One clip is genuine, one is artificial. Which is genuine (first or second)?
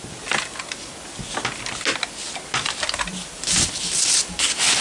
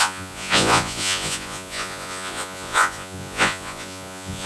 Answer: first